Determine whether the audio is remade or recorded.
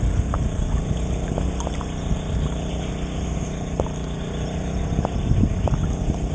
recorded